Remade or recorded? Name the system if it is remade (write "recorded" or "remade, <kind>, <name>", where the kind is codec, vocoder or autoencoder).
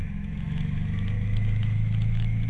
remade, autoencoder, DAC-VAE